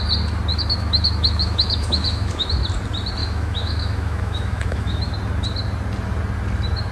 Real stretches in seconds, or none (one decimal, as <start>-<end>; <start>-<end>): 0.0-0.5; 2.5-3.2; 5.1-6.9